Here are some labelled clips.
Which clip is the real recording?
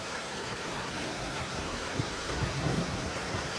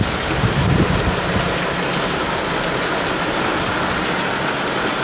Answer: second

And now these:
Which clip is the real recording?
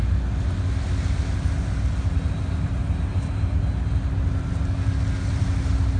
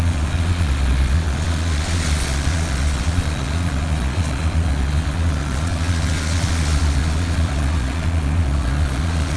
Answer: first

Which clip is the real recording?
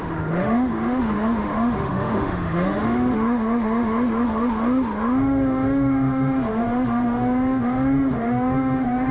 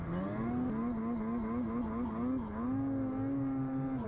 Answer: second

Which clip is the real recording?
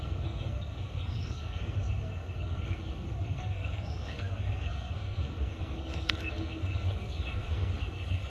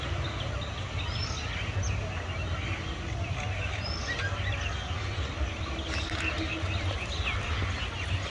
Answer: second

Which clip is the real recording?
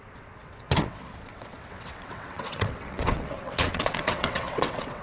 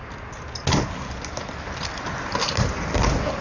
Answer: second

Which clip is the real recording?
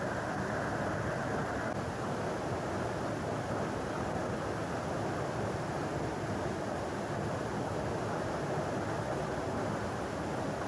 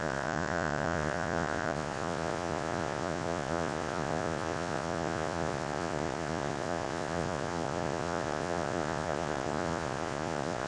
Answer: first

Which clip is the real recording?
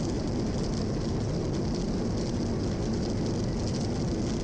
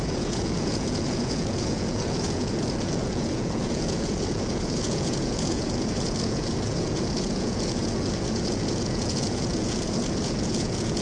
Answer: first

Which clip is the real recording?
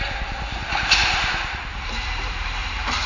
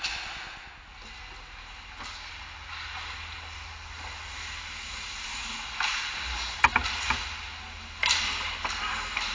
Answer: second